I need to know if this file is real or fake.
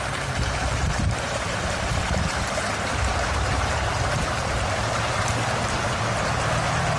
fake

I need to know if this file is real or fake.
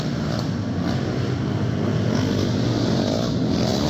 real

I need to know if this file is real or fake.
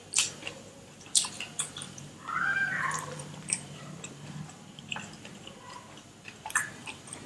fake